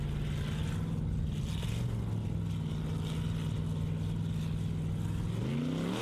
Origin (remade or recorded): recorded